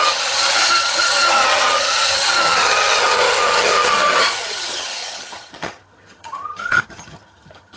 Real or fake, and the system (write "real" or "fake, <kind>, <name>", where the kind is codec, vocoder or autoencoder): fake, vocoder, HiFi-GAN